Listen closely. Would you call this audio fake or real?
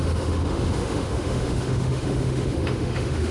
fake